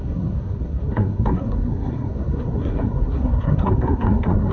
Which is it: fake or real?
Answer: fake